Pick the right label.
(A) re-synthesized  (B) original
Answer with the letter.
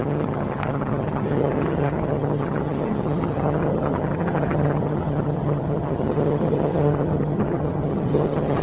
A